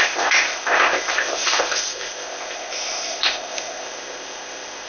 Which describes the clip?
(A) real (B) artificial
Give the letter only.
B